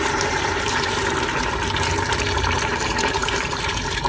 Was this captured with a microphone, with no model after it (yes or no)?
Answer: no